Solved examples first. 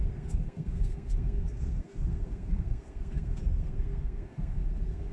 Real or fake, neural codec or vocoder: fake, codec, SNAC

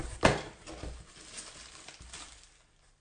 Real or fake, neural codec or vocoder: real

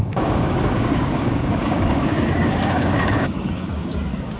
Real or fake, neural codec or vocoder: fake, codec, DAC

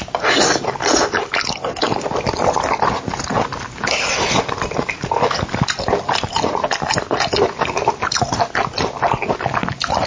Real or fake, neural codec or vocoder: real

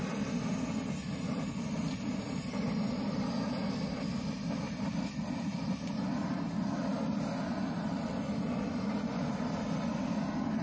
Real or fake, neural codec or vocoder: real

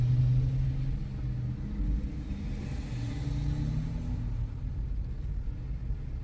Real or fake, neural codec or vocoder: real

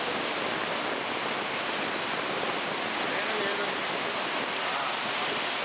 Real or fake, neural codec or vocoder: real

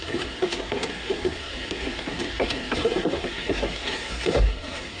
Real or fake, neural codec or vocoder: fake, codec, SNAC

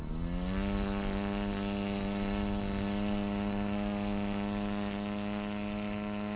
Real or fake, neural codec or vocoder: real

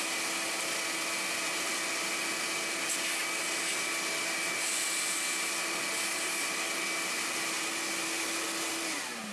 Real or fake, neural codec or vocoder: real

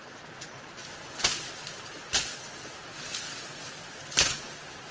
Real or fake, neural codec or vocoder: real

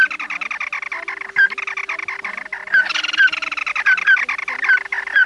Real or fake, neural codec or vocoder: real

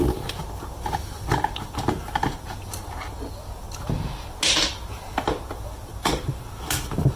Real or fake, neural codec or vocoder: real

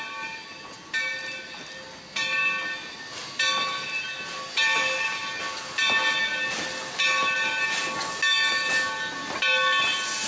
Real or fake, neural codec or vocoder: real